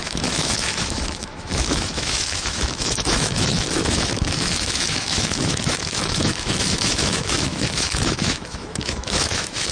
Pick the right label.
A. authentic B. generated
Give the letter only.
B